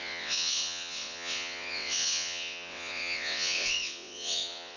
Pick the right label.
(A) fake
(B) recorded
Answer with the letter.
A